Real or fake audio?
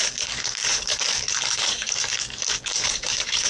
fake